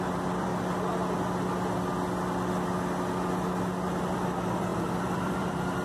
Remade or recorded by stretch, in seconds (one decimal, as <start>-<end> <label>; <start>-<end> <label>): 0.0-0.5 remade; 0.5-4.0 recorded; 4.0-5.8 remade